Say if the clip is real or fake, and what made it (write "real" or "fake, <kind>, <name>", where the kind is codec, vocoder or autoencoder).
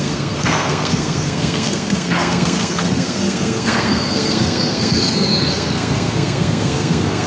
fake, codec, SNAC